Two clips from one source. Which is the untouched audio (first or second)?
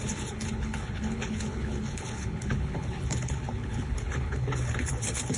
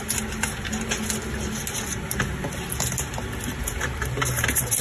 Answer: second